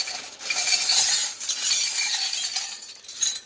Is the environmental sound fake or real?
real